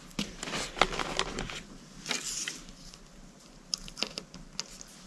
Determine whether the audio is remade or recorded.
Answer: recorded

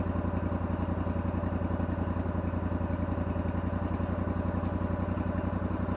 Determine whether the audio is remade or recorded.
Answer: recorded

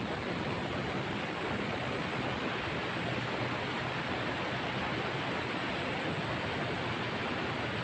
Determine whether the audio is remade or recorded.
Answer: remade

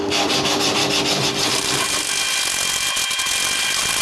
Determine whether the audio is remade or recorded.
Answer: remade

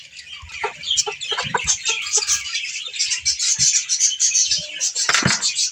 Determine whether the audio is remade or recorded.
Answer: recorded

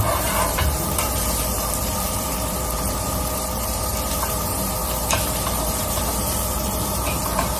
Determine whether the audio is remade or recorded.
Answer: remade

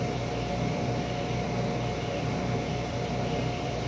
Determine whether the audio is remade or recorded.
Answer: remade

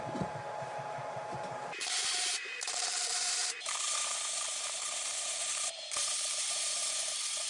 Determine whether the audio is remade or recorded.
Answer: remade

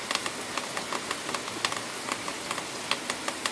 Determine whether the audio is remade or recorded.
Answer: recorded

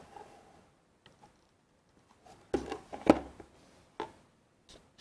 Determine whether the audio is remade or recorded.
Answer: recorded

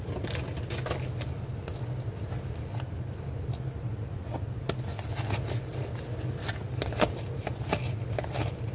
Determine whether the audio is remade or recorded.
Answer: recorded